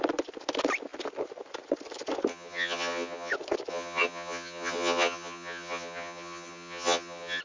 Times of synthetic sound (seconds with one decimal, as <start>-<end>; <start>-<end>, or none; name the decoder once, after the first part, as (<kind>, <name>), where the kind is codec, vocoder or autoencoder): 2.3-3.3 (vocoder, HiFi-GAN); 3.7-7.4